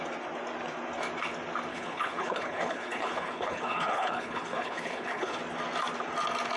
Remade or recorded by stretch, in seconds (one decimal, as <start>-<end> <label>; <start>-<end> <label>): 0.0-1.7 recorded; 1.7-5.4 remade; 5.4-6.6 recorded

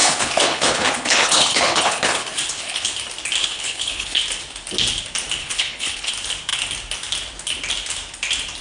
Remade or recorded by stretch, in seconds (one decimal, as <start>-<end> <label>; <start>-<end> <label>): 0.0-2.9 remade; 2.9-3.4 recorded; 3.4-4.2 remade; 4.2-5.4 recorded; 5.4-6.1 remade; 6.1-8.6 recorded

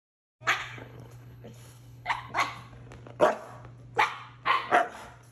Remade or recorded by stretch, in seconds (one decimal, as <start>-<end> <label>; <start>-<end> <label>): 0.0-0.6 recorded; 0.6-2.3 remade; 2.3-5.3 recorded

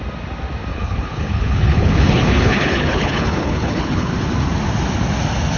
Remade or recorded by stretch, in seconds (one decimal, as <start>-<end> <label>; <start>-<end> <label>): 0.0-0.7 recorded; 0.7-4.1 remade; 4.1-5.6 recorded